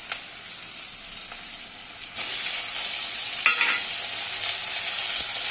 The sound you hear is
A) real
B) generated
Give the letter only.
A